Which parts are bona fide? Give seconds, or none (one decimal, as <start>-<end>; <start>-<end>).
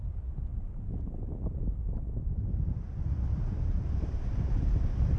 0.5-3.6